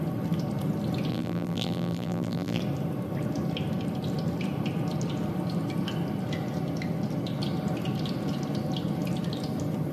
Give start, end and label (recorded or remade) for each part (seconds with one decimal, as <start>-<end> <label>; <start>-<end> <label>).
0.0-1.1 recorded; 1.1-2.6 remade; 2.6-9.9 recorded